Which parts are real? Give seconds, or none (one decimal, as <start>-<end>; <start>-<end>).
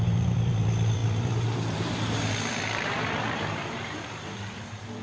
none